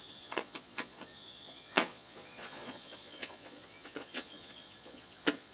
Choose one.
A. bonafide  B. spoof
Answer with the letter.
B